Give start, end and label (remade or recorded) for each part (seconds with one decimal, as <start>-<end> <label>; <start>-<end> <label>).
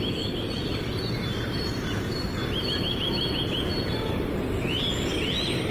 0.0-1.3 recorded; 1.3-4.7 remade; 4.7-5.7 recorded